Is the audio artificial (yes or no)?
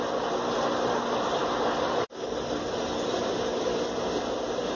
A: no